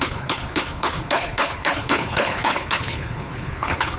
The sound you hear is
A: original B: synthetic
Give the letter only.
B